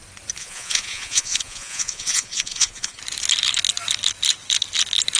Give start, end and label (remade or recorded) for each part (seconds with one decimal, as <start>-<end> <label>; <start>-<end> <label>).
0.0-0.4 recorded; 0.4-3.0 remade; 3.0-5.2 recorded

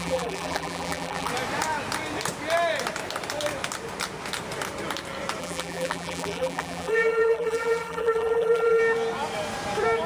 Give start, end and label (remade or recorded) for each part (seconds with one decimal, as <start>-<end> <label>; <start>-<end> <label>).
0.0-1.3 remade; 1.3-5.4 recorded; 5.4-8.8 remade; 8.8-10.1 recorded

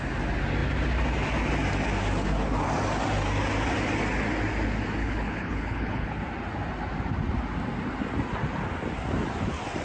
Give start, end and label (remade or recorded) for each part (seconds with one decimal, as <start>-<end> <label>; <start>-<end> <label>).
0.0-5.0 recorded; 5.0-6.2 remade; 6.2-9.8 recorded